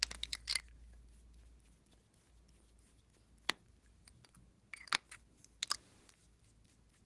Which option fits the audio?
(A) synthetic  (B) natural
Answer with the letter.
B